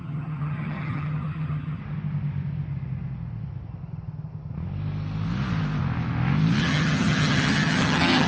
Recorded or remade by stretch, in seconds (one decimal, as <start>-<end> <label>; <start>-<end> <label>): 0.0-1.8 remade; 1.8-6.6 recorded; 6.6-8.3 remade